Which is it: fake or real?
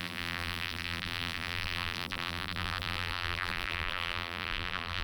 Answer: fake